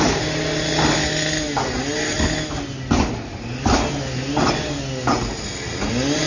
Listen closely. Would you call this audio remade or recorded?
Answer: recorded